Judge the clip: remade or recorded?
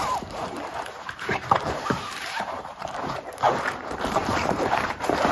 remade